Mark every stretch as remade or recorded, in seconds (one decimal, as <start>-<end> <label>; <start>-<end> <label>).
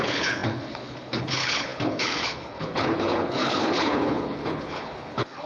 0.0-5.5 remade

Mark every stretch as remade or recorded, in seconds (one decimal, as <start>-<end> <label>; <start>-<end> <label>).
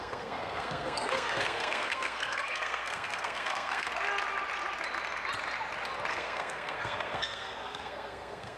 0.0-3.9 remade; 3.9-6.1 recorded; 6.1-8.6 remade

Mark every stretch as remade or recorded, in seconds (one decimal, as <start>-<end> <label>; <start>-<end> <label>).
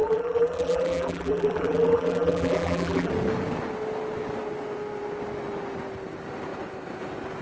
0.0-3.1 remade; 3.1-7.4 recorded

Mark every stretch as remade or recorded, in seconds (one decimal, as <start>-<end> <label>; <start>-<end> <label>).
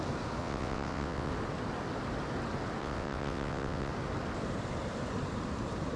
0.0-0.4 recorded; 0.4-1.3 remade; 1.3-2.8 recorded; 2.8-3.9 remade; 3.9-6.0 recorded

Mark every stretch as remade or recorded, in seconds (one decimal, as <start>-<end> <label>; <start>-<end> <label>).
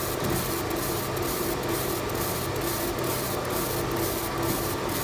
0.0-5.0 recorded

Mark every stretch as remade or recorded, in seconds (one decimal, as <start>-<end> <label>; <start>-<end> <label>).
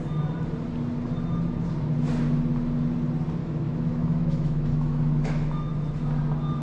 0.0-3.4 recorded; 3.4-5.7 remade; 5.7-6.6 recorded